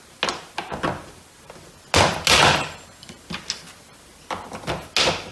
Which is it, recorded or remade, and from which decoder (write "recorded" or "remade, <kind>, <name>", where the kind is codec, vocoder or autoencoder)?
recorded